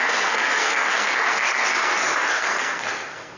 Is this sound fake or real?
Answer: fake